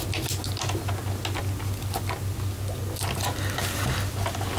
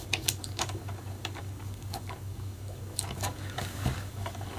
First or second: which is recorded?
first